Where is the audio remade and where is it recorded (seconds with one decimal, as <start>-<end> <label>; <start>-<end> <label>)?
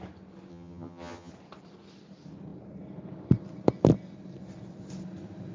0.0-0.5 recorded; 0.5-1.3 remade; 1.3-5.5 recorded